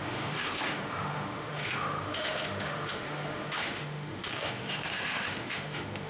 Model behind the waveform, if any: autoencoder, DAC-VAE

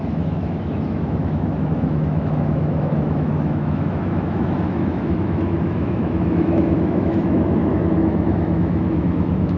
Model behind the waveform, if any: autoencoder, DAC-VAE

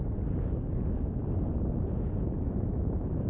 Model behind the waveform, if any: none